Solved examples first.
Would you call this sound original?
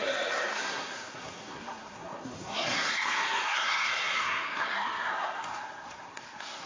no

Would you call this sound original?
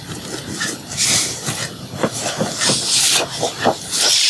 yes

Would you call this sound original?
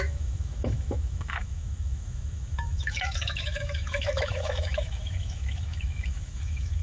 no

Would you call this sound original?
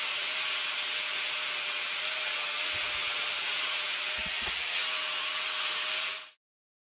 yes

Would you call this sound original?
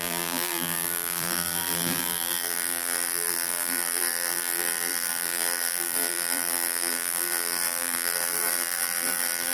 no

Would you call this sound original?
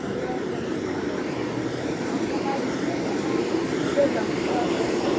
no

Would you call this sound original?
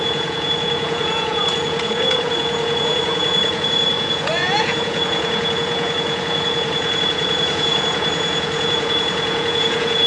no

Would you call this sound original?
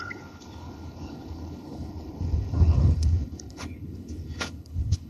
no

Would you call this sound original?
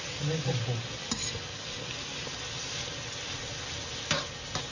yes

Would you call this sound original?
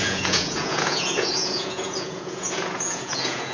no